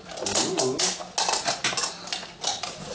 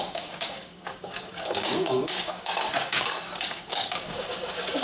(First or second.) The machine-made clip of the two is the second